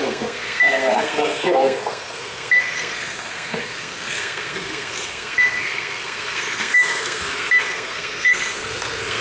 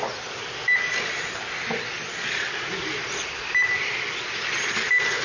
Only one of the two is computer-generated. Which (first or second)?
first